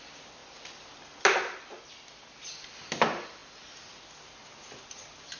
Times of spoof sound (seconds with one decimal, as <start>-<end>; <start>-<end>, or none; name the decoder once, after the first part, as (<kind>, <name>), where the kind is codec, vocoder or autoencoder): none

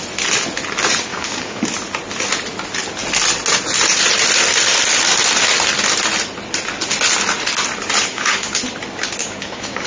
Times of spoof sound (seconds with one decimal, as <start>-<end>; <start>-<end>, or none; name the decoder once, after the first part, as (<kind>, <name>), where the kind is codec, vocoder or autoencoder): 1.1-1.6 (codec, DAC); 8.1-8.6; 9.2-9.9

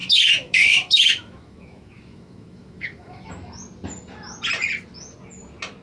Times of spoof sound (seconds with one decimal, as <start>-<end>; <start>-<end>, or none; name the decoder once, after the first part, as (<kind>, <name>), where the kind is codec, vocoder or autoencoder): 0.0-3.3 (autoencoder, DAC-VAE)

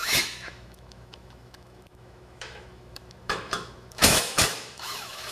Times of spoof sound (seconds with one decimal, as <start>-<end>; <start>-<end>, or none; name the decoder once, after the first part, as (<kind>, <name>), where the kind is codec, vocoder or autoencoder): 0.0-5.3 (autoencoder, DAC-VAE)

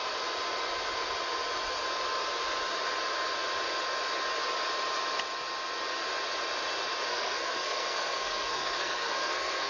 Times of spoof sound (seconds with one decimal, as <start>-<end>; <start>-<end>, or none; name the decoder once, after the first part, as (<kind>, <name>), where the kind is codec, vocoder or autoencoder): 7.1-9.7 (codec, SNAC)

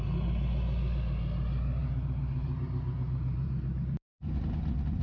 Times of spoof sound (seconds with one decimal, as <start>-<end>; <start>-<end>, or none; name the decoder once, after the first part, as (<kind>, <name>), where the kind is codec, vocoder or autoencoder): 1.8-4.3 (vocoder, BigVGAN v2)